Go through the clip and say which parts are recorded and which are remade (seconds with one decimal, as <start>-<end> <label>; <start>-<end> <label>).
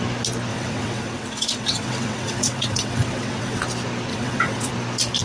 0.0-0.5 recorded; 0.5-3.6 remade; 3.6-4.1 recorded; 4.1-4.7 remade; 4.7-5.2 recorded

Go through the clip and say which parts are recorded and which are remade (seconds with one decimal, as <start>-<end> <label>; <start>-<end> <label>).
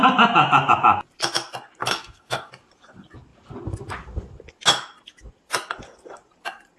0.0-1.8 recorded; 1.8-2.5 remade; 2.5-6.8 recorded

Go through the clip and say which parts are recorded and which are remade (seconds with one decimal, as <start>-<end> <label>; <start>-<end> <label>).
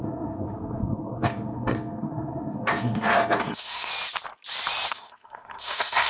0.0-3.9 remade; 3.9-4.9 recorded; 4.9-6.1 remade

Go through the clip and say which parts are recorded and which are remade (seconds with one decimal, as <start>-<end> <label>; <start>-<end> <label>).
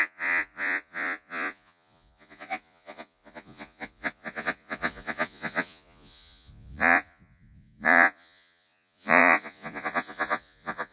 0.0-10.9 remade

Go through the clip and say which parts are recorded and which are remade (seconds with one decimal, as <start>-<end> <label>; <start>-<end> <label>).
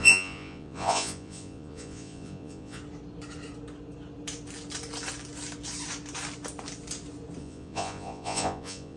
0.0-2.8 remade; 2.8-7.4 recorded; 7.4-9.0 remade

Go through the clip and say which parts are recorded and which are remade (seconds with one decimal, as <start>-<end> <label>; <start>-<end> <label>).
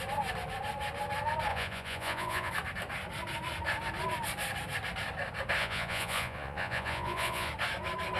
0.0-1.5 recorded; 1.5-2.5 remade; 2.5-5.6 recorded; 5.6-7.5 remade; 7.5-8.2 recorded